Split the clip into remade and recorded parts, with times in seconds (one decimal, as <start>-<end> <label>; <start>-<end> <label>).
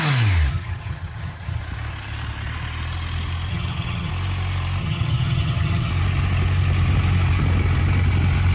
0.0-0.5 recorded; 0.5-1.6 remade; 1.6-3.5 recorded; 3.5-4.1 remade; 4.1-4.8 recorded; 4.8-5.9 remade; 5.9-8.5 recorded